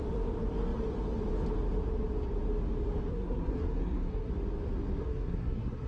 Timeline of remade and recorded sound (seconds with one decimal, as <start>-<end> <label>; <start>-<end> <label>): 0.0-3.1 recorded; 3.1-4.3 remade; 4.3-5.0 recorded; 5.0-5.9 remade